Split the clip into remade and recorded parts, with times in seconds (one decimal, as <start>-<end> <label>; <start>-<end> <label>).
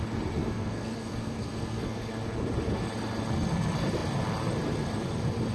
0.0-0.4 recorded; 0.4-2.1 remade; 2.1-5.5 recorded